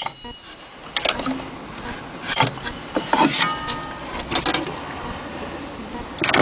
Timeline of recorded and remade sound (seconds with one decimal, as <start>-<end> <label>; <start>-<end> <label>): 0.0-6.4 recorded